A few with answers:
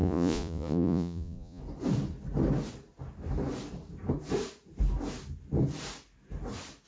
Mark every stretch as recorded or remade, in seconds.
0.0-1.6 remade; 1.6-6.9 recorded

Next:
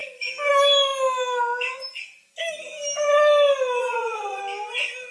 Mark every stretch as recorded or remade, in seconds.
0.0-3.8 recorded; 3.8-4.4 remade; 4.4-5.1 recorded

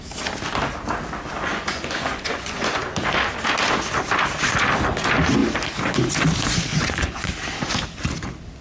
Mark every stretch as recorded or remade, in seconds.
0.0-1.5 recorded; 1.5-2.8 remade; 2.8-6.7 recorded; 6.7-7.3 remade; 7.3-8.6 recorded

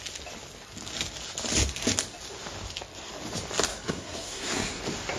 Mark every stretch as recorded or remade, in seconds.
0.0-3.7 recorded; 3.7-4.8 remade; 4.8-5.2 recorded

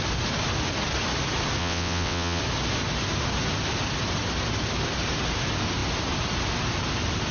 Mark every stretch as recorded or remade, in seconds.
0.0-1.6 recorded; 1.6-2.4 remade; 2.4-7.3 recorded

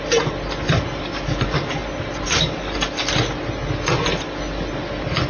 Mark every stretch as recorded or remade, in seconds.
0.0-5.3 recorded